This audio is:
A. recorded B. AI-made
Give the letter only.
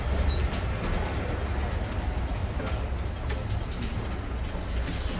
A